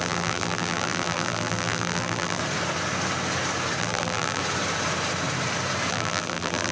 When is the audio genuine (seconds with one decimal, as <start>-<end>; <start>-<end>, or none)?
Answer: 2.4-3.8; 4.4-5.9